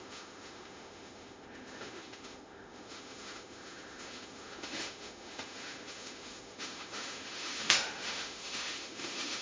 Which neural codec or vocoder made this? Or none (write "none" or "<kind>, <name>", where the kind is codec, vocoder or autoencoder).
autoencoder, DAC-VAE